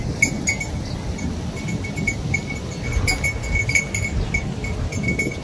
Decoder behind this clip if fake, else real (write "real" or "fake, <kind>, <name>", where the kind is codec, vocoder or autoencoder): real